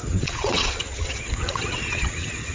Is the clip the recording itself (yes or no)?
no